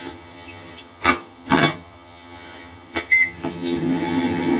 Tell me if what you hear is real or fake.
fake